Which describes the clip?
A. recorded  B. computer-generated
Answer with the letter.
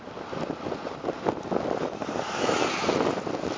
A